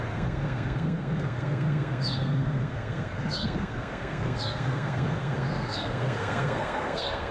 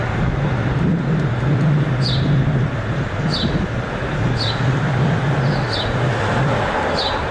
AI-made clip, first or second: first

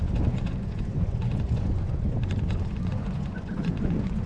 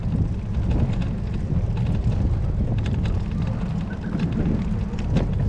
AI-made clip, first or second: first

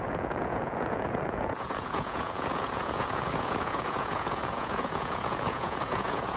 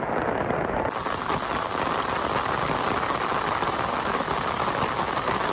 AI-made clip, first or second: first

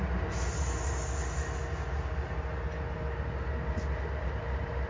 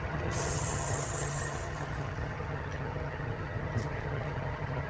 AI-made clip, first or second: second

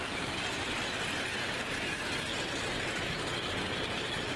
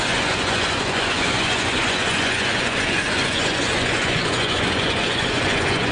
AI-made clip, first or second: second